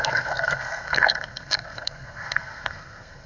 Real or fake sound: fake